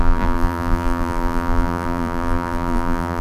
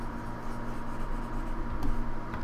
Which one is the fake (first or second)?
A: first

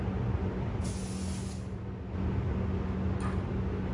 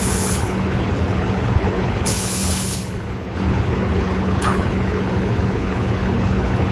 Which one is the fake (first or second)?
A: second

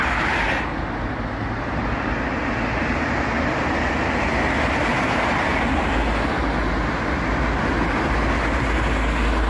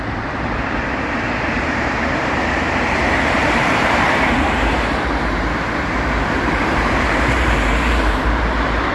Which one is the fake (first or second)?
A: second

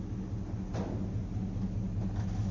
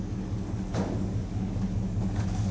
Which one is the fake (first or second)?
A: second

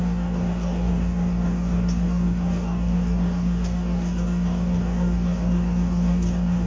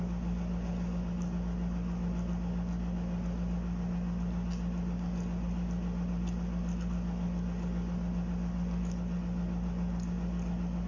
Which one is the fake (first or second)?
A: first